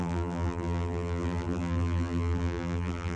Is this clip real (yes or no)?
no